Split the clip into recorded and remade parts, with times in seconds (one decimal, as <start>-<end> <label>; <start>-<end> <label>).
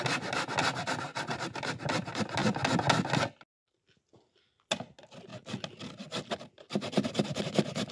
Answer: 0.0-7.9 recorded